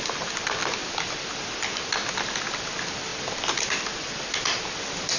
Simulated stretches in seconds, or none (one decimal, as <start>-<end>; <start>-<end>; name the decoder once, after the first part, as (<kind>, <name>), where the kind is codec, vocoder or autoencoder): none

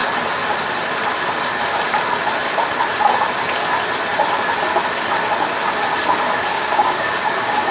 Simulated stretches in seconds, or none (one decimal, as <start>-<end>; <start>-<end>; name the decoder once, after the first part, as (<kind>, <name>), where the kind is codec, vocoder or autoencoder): 6.5-7.7 (codec, DAC)

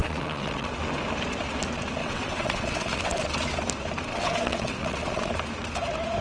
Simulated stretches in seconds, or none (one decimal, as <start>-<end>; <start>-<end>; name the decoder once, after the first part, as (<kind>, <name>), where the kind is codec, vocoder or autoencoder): 0.0-0.7 (vocoder, WaveNeXt); 2.0-3.2; 4.1-5.3